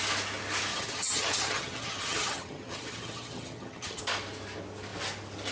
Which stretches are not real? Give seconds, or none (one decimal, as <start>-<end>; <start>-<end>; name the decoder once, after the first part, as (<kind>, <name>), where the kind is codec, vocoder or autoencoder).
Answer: 0.7-4.0 (vocoder, HiFi-GAN)